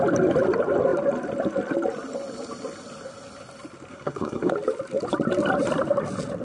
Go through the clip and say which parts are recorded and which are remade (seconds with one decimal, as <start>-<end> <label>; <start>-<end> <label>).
0.0-3.9 recorded; 3.9-4.5 remade; 4.5-6.4 recorded